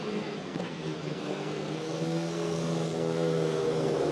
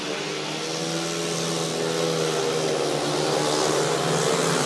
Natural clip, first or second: second